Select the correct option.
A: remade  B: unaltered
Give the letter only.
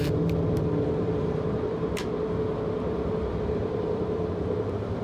A